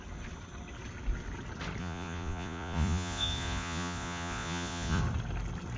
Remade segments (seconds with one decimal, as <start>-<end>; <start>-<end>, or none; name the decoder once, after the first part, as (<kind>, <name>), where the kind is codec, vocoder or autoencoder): 1.8-5.0 (vocoder, Vocos)